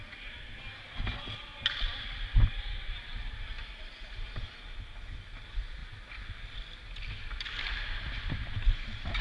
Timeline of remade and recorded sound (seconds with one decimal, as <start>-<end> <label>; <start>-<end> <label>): 0.0-9.2 recorded